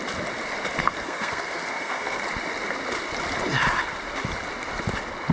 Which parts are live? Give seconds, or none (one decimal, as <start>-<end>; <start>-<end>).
0.0-0.8; 2.2-5.3